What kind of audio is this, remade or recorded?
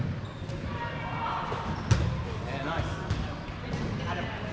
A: recorded